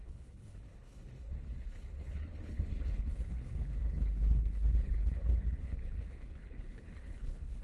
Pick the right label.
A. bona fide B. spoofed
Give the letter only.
B